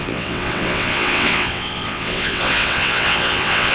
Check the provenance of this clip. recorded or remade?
remade